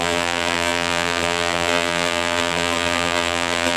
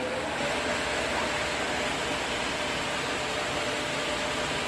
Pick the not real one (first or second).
first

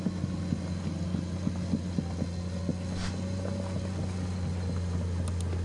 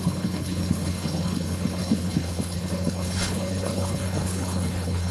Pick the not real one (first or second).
second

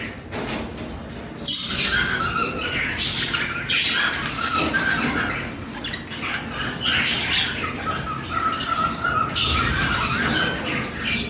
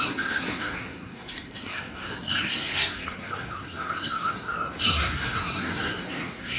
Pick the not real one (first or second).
second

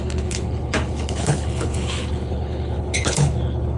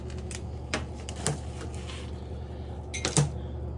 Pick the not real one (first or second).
first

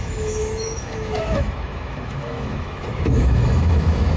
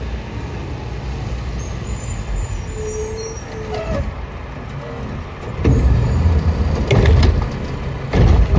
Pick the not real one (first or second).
first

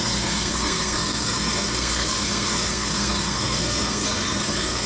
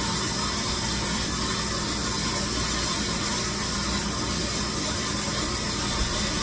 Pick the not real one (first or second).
first